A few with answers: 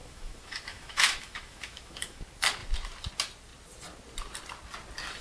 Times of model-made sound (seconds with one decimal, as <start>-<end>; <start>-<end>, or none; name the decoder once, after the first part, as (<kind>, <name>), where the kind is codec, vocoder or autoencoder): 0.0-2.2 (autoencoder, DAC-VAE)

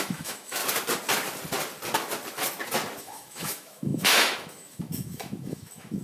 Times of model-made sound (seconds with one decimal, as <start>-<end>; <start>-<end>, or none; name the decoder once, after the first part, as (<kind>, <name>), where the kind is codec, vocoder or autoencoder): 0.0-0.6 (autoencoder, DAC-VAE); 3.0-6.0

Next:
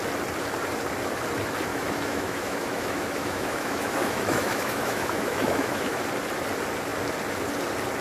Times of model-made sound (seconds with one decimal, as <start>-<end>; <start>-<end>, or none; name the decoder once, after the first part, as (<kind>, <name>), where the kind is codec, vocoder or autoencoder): 1.7-6.0 (autoencoder, DAC-VAE)